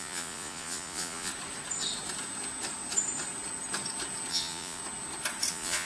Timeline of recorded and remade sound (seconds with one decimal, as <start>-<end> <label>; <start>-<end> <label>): 0.0-1.3 remade; 1.3-4.3 recorded; 4.3-4.8 remade; 4.8-5.5 recorded; 5.5-5.9 remade